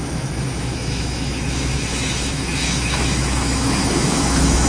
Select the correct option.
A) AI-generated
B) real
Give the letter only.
A